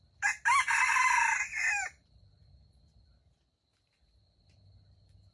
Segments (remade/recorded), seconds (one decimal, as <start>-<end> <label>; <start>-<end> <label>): 0.0-5.3 recorded